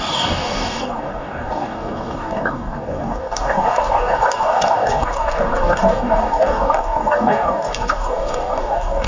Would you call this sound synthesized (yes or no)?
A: yes